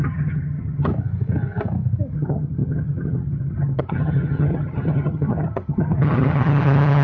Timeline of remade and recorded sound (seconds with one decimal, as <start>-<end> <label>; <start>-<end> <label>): 0.0-0.9 remade; 0.9-2.1 recorded; 2.1-7.0 remade

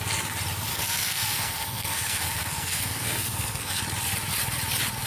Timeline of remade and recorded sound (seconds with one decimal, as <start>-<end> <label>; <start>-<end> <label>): 0.0-0.7 recorded; 0.7-3.8 remade; 3.8-5.1 recorded